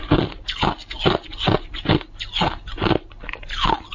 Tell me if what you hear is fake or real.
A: real